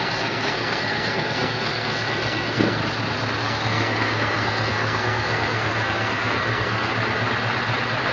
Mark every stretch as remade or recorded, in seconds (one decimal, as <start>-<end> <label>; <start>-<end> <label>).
0.0-2.8 remade; 2.8-3.4 recorded; 3.4-6.9 remade; 6.9-8.1 recorded